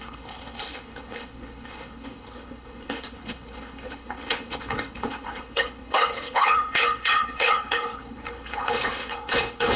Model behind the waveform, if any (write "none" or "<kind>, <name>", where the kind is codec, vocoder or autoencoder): codec, HILCodec